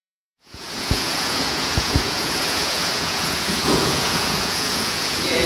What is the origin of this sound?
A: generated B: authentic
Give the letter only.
A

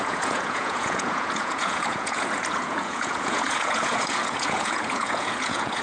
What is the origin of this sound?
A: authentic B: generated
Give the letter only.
B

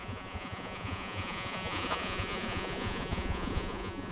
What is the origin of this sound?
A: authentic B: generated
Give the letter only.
B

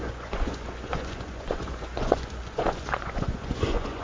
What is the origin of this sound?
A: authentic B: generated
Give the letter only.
B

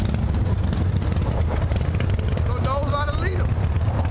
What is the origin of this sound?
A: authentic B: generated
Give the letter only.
A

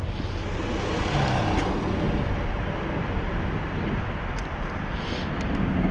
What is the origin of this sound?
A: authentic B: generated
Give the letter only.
A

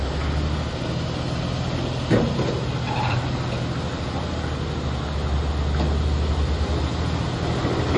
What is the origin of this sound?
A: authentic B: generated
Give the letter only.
A